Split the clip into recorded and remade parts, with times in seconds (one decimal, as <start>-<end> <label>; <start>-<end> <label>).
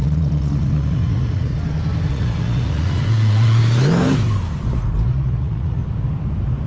0.0-1.5 remade; 1.5-2.1 recorded; 2.1-3.6 remade; 3.6-5.1 recorded; 5.1-5.8 remade; 5.8-6.7 recorded